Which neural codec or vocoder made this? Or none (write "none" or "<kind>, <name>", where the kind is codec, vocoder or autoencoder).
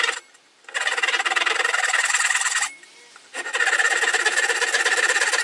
none